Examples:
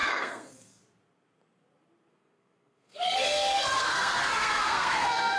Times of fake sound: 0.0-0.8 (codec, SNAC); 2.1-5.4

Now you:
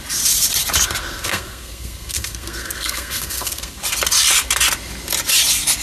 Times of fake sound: 1.0-3.8 (codec, SNAC)

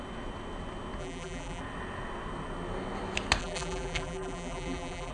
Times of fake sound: 1.0-1.6 (vocoder, BigVGAN v2); 3.4-5.1

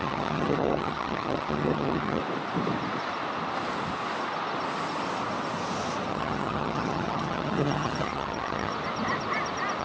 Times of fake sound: 0.0-2.2 (vocoder, HiFi-GAN); 6.1-8.7

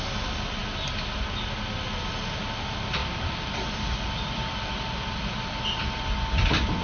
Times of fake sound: 3.0-5.5 (vocoder, BigVGAN v2)

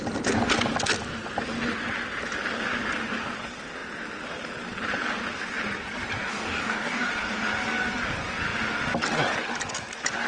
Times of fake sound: 6.3-7.1 (codec, DAC)